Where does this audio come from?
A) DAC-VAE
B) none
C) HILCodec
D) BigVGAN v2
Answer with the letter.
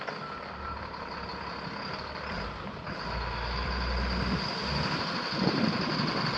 B